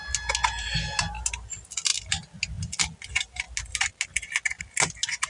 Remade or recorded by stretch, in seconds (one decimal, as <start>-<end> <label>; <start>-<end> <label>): 0.0-5.3 recorded

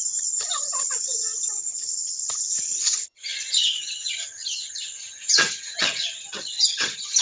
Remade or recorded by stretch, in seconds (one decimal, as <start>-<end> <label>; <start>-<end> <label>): 0.0-7.2 remade

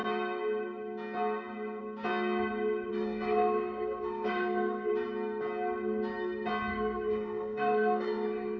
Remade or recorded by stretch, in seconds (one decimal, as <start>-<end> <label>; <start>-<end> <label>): 0.0-2.9 recorded; 2.9-4.9 remade; 4.9-6.7 recorded; 6.7-8.6 remade

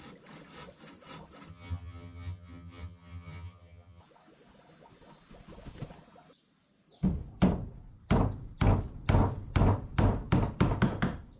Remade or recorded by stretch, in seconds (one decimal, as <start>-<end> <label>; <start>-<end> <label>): 0.0-1.5 recorded; 1.5-4.0 remade; 4.0-11.4 recorded

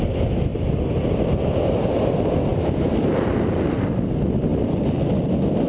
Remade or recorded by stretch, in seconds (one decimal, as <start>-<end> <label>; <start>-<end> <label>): 0.0-5.7 recorded

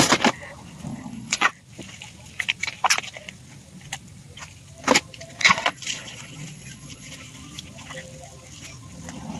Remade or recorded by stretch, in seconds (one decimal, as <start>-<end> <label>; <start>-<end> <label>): 0.0-0.9 recorded; 0.9-1.5 remade; 1.5-5.4 recorded; 5.4-7.1 remade; 7.1-9.4 recorded

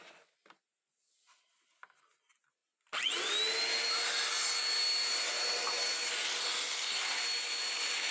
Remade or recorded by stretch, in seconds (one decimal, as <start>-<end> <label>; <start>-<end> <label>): 0.0-8.1 recorded